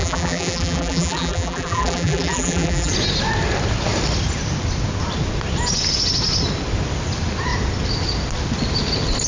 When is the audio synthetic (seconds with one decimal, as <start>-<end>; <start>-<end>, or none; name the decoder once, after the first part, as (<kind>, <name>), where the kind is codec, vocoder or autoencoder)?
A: 0.0-2.9 (vocoder, BigVGAN v2)